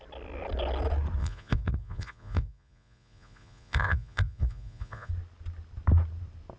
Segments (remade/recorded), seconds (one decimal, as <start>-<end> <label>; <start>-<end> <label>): 0.0-1.2 recorded; 1.2-5.1 remade; 5.1-6.6 recorded